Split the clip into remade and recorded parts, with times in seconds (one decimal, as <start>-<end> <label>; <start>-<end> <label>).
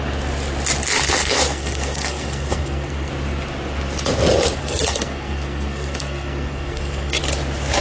0.0-1.2 recorded; 1.2-3.1 remade; 3.1-4.6 recorded; 4.6-7.2 remade; 7.2-7.8 recorded